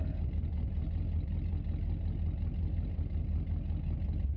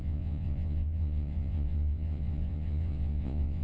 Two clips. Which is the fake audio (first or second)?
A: second